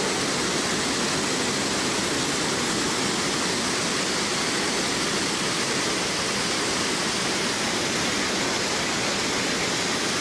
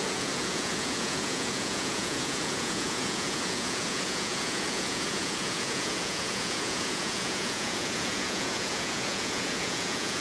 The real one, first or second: first